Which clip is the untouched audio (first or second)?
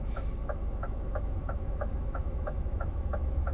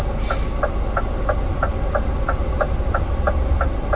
second